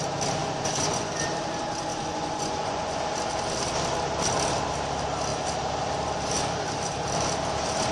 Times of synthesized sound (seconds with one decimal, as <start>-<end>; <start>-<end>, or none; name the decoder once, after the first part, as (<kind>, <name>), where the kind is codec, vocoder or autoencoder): 0.4-1.1 (vocoder, Vocos); 1.9-3.0